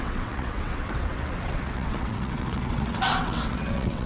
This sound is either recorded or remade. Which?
remade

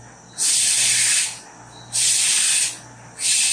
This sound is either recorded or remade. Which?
recorded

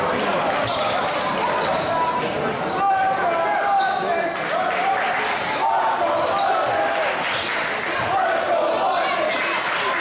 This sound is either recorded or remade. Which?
recorded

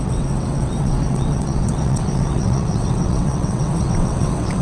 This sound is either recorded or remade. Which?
remade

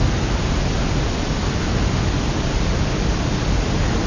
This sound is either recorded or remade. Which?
recorded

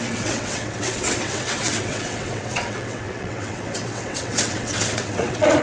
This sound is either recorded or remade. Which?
remade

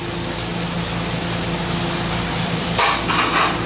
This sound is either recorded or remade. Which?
recorded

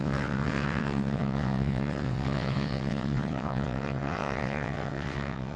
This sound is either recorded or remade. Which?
remade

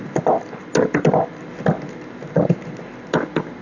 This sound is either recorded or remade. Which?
recorded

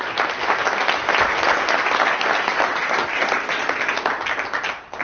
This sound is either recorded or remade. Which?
recorded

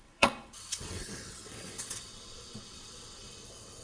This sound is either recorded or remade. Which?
remade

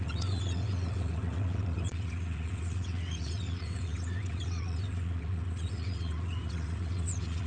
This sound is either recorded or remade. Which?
remade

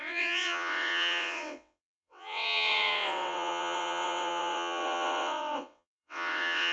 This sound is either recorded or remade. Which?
remade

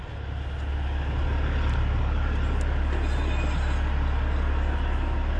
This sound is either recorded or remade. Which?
recorded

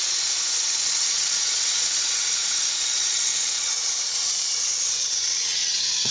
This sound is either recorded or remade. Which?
remade